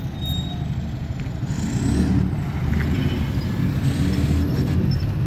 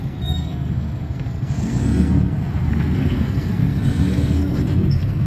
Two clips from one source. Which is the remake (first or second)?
second